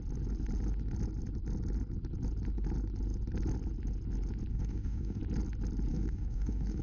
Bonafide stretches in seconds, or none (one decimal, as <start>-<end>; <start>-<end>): 0.0-4.5; 5.2-5.9